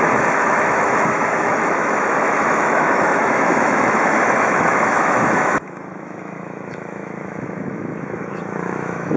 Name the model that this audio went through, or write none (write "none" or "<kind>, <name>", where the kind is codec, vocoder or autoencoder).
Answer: autoencoder, DAC-VAE